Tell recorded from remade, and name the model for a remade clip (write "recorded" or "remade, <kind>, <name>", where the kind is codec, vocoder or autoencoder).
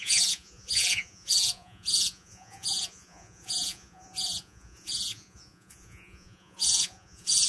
remade, vocoder, Vocos